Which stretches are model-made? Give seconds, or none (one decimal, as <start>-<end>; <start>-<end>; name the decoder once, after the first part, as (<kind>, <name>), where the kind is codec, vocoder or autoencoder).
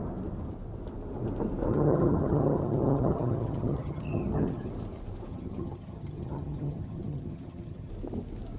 1.7-4.7 (vocoder, HiFi-GAN); 5.3-7.9